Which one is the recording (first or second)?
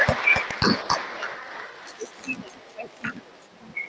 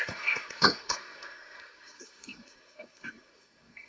first